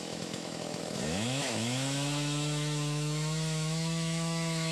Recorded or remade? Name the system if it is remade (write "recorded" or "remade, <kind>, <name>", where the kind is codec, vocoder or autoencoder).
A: remade, autoencoder, DAC-VAE